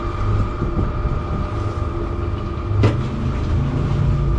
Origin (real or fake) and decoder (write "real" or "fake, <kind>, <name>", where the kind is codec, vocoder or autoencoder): real